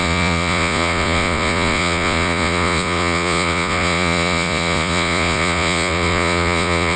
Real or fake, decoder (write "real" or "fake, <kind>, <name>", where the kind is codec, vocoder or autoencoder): fake, vocoder, Vocos